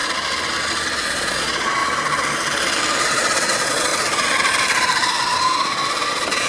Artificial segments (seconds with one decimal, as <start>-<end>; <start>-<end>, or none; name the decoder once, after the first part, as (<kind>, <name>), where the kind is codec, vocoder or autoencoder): 1.0-1.8 (vocoder, Vocos); 3.0-3.9; 5.4-6.5